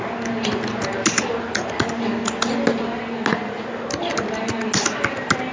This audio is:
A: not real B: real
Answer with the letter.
B